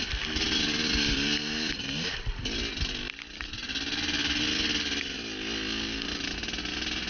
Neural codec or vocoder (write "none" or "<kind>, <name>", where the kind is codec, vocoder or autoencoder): none